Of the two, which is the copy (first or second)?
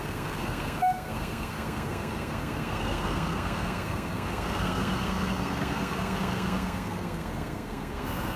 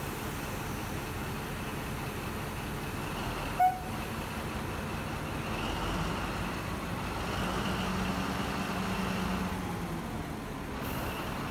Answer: first